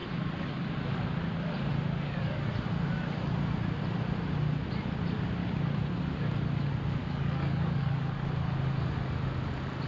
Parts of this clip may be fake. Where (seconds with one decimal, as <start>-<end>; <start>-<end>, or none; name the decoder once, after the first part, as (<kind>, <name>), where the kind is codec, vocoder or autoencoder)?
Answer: 7.0-8.3 (codec, DAC)

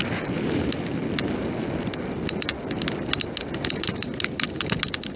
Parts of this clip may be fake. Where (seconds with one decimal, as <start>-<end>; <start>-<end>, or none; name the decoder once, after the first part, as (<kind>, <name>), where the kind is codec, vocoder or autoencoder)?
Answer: none